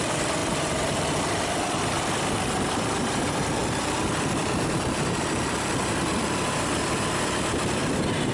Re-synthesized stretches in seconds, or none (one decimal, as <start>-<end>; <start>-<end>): 0.0-8.3